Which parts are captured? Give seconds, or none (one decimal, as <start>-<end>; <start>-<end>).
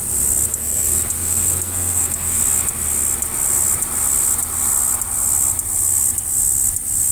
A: 0.0-0.5; 2.4-7.1